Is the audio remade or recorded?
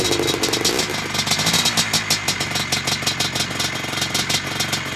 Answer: recorded